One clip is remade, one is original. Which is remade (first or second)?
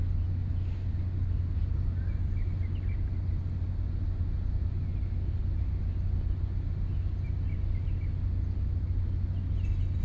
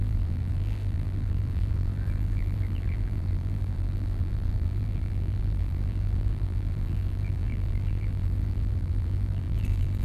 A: second